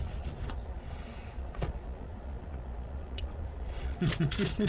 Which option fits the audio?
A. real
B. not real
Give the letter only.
B